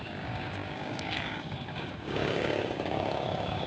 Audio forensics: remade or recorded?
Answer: remade